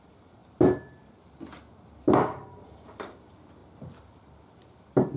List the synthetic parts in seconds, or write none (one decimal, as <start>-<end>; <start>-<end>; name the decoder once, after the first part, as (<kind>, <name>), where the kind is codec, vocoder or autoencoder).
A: 0.0-0.4 (vocoder, BigVGAN v2); 1.7-3.6